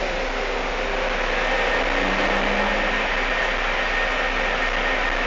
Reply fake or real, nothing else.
real